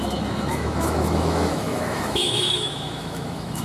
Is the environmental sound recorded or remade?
remade